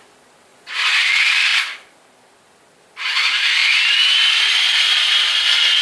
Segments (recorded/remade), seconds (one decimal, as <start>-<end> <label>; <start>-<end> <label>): 0.0-0.5 recorded; 0.5-1.0 remade; 1.0-5.8 recorded